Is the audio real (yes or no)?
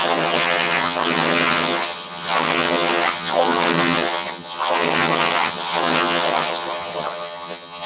no